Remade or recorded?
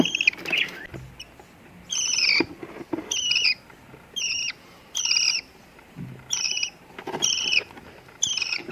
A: recorded